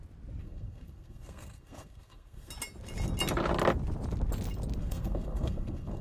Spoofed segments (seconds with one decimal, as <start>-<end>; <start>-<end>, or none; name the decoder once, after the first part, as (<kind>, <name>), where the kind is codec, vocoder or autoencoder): 0.4-2.5 (codec, SNAC); 4.8-6.0